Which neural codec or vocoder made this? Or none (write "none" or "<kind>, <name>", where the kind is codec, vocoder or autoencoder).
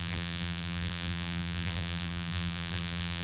vocoder, BigVGAN v2